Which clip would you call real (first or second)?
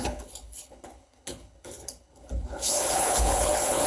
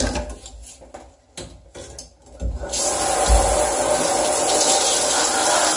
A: second